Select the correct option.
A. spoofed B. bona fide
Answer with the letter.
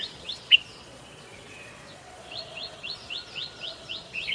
A